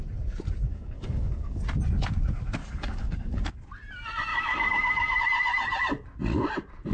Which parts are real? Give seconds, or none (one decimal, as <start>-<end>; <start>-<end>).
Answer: 0.0-0.7; 1.6-2.6; 3.4-4.3; 5.2-6.9